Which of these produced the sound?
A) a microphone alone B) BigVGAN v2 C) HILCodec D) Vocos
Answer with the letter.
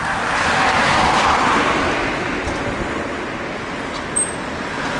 A